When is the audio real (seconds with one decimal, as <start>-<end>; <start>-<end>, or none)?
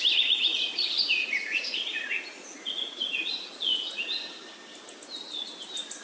0.0-0.5; 4.0-6.0